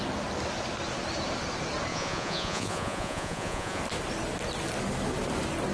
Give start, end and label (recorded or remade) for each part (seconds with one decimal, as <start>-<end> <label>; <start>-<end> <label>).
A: 0.0-1.9 recorded; 1.9-3.8 remade; 3.8-5.7 recorded